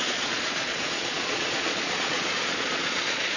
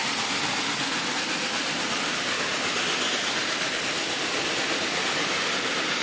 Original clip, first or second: second